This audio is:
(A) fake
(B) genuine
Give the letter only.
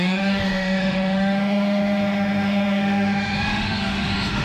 A